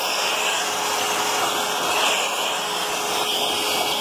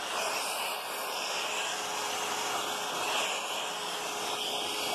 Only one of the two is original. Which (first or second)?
first